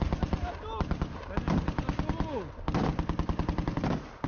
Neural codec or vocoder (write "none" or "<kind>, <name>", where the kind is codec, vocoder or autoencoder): none